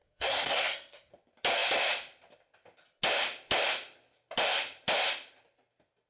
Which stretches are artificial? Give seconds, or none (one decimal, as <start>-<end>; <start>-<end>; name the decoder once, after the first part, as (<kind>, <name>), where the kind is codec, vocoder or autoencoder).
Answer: 0.0-1.1 (codec, SNAC)